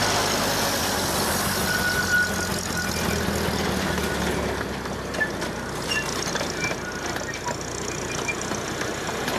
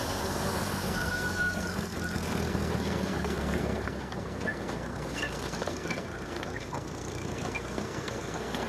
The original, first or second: first